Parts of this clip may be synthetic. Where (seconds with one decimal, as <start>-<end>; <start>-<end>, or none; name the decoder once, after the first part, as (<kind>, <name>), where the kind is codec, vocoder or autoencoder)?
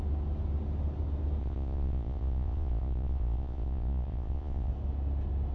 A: 1.4-4.7 (vocoder, Vocos)